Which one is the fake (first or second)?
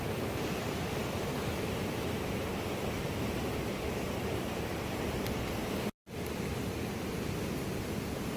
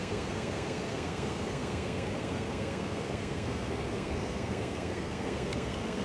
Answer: second